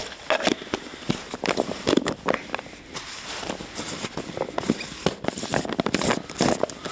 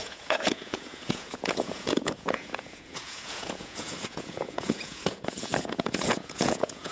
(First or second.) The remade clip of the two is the second